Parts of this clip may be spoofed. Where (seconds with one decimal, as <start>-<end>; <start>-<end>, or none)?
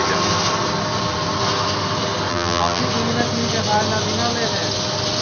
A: 2.3-2.8